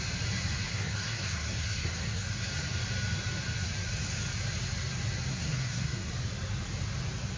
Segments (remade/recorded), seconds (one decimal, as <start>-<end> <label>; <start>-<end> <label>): 0.0-0.7 recorded; 0.7-2.5 remade; 2.5-5.3 recorded; 5.3-6.1 remade; 6.1-7.4 recorded